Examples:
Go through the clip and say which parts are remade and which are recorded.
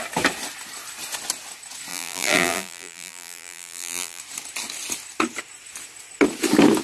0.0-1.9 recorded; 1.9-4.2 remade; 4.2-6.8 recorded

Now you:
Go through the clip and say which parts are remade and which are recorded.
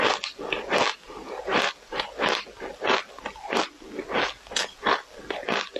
0.0-5.8 recorded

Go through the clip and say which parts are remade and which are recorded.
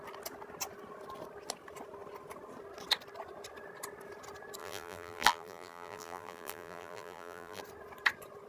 0.0-4.6 recorded; 4.6-7.6 remade; 7.6-8.5 recorded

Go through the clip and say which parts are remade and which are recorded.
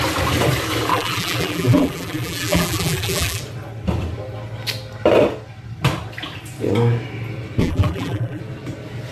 0.0-0.9 recorded; 0.9-3.4 remade; 3.4-7.6 recorded; 7.6-8.4 remade; 8.4-9.1 recorded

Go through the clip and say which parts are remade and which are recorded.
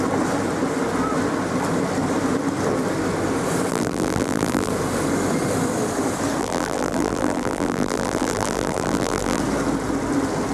0.0-3.7 recorded; 3.7-4.7 remade; 4.7-6.4 recorded; 6.4-9.4 remade; 9.4-10.5 recorded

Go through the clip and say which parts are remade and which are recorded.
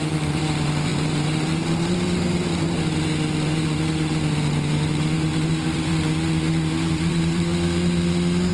0.0-5.9 remade; 5.9-6.9 recorded; 6.9-7.5 remade; 7.5-8.5 recorded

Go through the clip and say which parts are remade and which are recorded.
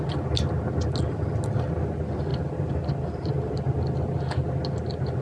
0.0-2.3 recorded; 2.3-3.3 remade; 3.3-5.2 recorded